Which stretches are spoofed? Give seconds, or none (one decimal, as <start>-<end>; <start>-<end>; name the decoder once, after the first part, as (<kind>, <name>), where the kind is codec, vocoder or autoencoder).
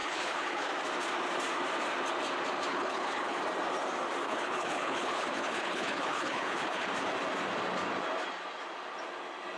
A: 0.0-0.7 (codec, HILCodec); 2.7-3.4; 4.2-6.9